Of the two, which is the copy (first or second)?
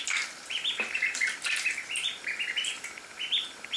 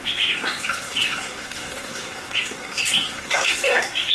second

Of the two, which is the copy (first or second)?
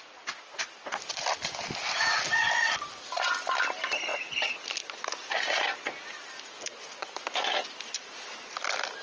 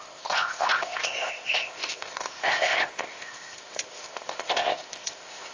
second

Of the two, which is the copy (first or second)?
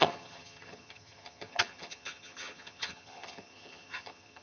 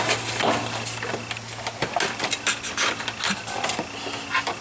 first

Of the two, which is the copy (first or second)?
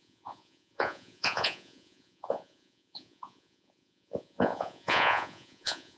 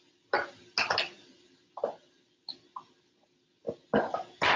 first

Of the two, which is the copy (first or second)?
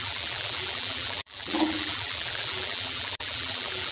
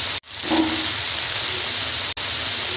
first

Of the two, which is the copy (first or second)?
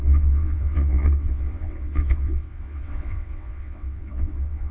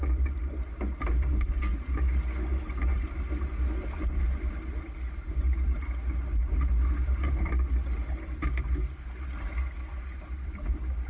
first